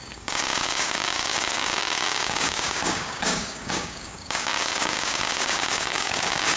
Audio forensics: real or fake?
fake